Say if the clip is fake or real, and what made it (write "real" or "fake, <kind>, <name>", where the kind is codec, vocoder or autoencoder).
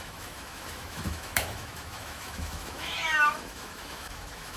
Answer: fake, autoencoder, DAC-VAE